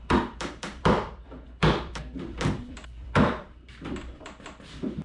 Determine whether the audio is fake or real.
fake